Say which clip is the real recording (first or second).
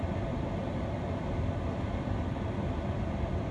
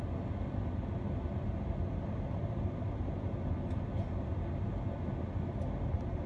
second